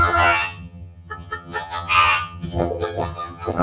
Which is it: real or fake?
fake